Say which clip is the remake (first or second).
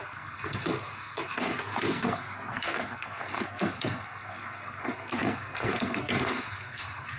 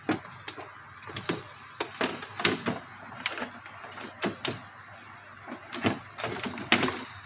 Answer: first